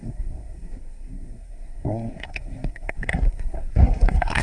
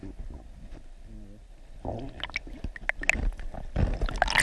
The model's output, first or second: first